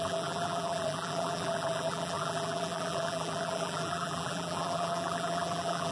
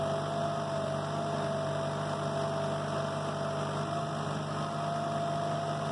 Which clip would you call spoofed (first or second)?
first